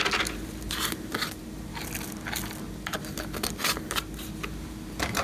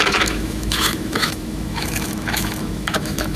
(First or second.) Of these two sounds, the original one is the first